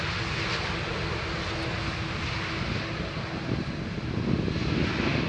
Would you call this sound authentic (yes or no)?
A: yes